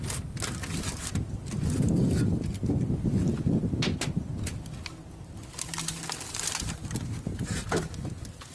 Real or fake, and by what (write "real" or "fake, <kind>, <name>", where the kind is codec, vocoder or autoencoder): real